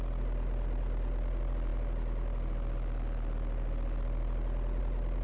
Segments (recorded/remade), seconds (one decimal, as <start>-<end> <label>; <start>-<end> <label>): 0.0-5.2 recorded